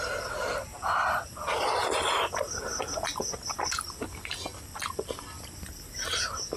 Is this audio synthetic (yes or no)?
no